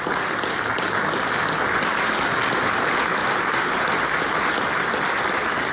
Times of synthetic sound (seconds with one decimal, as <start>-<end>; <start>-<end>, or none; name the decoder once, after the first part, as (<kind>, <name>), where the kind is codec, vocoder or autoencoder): none